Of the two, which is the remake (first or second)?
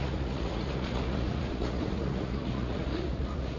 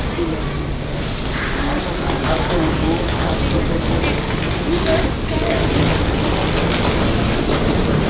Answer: first